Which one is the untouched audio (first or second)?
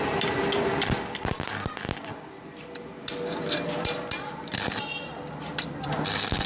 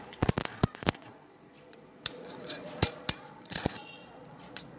first